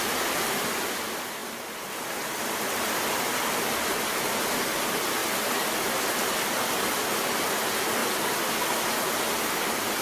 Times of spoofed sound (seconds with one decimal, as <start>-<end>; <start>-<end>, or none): 1.4-3.2; 5.2-5.9